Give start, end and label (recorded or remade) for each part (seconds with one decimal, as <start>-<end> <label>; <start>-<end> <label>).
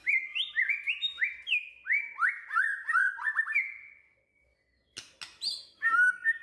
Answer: 0.0-6.4 recorded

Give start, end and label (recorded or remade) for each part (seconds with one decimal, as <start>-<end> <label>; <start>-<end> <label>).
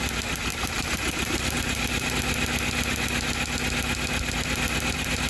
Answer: 0.0-0.5 recorded; 0.5-2.1 remade; 2.1-5.3 recorded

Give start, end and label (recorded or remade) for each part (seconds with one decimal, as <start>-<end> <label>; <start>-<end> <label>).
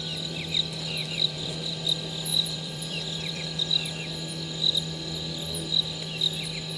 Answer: 0.0-1.0 recorded; 1.0-1.7 remade; 1.7-2.3 recorded; 2.3-3.7 remade; 3.7-6.8 recorded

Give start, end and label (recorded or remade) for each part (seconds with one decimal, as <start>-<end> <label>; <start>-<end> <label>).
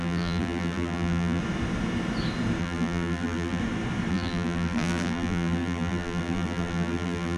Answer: 0.0-1.4 remade; 1.4-2.6 recorded; 2.6-3.6 remade; 3.6-4.1 recorded; 4.1-7.4 remade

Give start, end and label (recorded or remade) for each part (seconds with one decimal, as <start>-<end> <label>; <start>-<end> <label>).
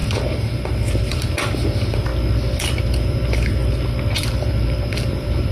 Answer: 0.0-2.1 remade; 2.1-2.6 recorded; 2.6-3.6 remade; 3.6-4.2 recorded; 4.2-5.5 remade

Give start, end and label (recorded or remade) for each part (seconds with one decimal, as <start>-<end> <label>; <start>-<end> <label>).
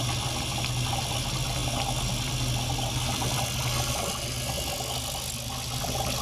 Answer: 0.0-6.2 recorded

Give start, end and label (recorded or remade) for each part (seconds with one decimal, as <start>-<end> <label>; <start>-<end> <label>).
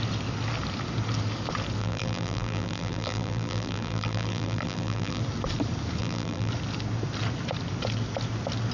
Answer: 0.0-1.8 recorded; 1.8-5.2 remade; 5.2-6.0 recorded; 6.0-6.5 remade; 6.5-8.7 recorded